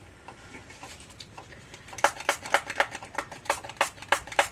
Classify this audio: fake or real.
fake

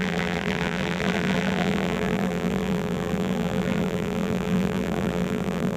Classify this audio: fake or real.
fake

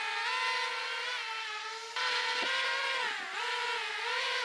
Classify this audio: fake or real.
real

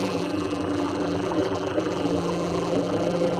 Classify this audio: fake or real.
fake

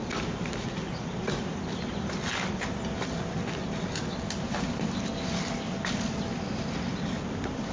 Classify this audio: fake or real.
real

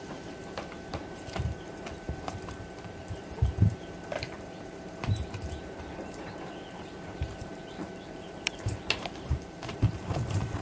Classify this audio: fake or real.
fake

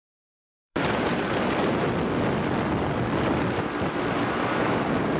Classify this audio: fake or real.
fake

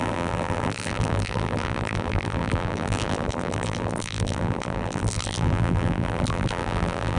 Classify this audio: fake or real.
fake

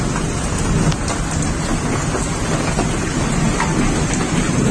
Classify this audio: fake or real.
real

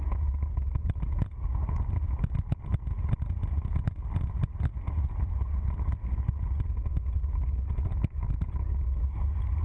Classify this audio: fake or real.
real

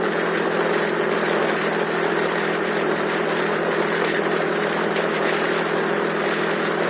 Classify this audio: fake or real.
fake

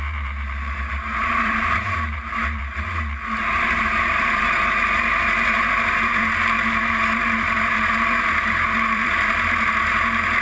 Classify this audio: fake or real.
fake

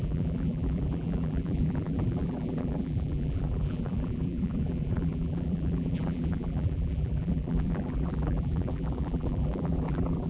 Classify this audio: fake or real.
fake